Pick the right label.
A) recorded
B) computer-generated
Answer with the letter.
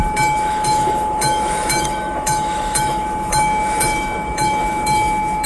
B